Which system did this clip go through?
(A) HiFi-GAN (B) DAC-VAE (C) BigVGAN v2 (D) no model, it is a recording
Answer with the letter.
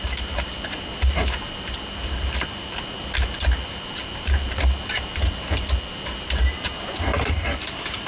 C